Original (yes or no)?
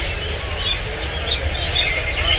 yes